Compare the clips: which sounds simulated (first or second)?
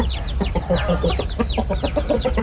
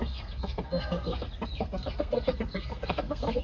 second